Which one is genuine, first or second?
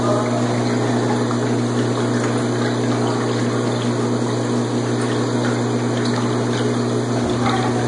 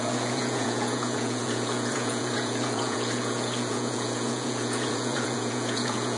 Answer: first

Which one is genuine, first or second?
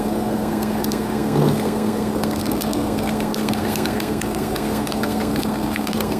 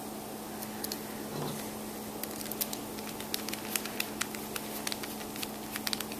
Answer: second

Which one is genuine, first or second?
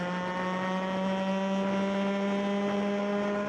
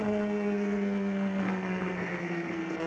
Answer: first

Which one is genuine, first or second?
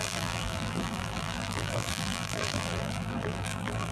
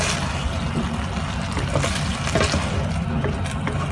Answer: second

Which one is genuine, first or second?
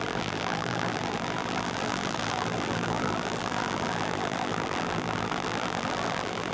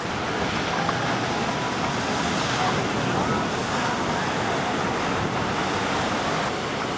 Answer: second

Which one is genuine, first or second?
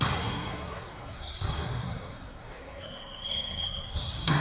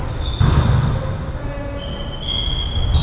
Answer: second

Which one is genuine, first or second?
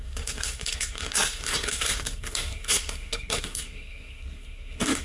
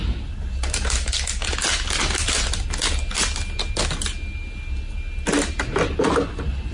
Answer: second